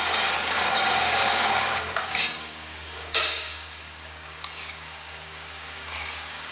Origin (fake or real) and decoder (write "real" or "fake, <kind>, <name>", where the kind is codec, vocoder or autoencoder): fake, codec, DAC